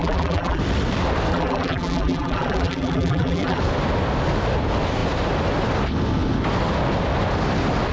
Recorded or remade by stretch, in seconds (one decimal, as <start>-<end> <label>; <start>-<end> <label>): 0.0-0.6 remade; 0.6-1.3 recorded; 1.3-3.6 remade; 3.6-7.9 recorded

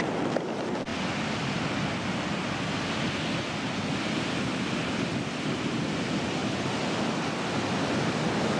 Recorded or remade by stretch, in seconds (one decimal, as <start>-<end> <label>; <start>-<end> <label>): 0.0-8.6 recorded